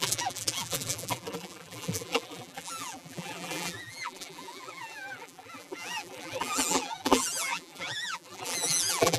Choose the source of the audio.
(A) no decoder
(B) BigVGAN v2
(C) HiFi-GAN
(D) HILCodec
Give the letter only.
B